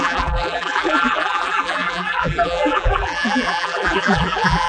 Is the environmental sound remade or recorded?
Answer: remade